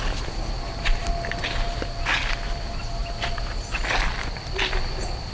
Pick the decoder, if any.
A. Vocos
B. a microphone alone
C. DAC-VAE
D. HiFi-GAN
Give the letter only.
B